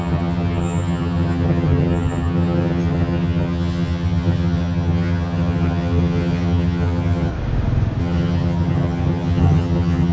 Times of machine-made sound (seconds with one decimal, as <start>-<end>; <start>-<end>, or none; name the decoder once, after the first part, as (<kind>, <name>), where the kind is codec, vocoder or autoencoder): 0.0-7.3 (vocoder, HiFi-GAN); 8.0-10.1